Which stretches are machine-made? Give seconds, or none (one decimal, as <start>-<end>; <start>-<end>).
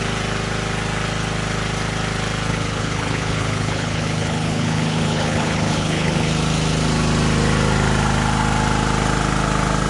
2.5-6.3